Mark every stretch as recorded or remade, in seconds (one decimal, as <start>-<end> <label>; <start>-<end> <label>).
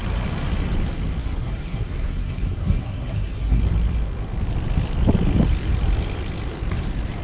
0.0-1.2 recorded; 1.2-3.6 remade; 3.6-7.2 recorded